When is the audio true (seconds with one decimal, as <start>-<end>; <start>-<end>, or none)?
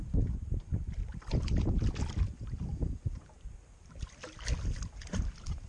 0.0-5.7